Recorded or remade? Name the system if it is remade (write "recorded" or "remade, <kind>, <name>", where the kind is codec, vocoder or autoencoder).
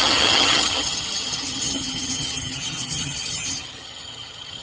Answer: remade, vocoder, HiFi-GAN